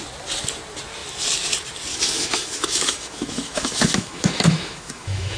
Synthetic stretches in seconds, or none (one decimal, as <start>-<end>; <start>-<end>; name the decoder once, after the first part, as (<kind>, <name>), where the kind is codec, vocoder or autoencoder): 1.9-5.4 (autoencoder, DAC-VAE)